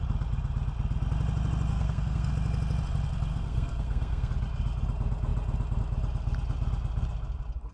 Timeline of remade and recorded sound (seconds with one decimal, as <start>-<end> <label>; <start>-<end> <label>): 0.0-1.7 recorded; 1.7-2.3 remade; 2.3-3.3 recorded; 3.3-4.3 remade; 4.3-7.7 recorded